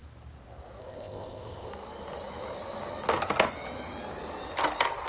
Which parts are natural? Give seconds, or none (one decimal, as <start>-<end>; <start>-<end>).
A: 0.0-0.8; 1.7-5.1